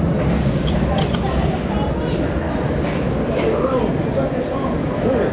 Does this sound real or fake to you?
real